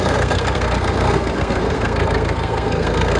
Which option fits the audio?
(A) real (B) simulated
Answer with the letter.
B